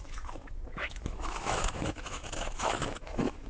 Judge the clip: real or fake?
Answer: fake